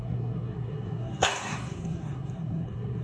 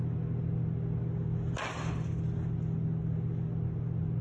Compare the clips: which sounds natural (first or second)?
second